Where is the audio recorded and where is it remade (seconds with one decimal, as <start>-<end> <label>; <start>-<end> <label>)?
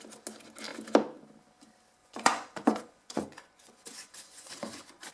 0.0-2.0 recorded; 2.0-5.1 remade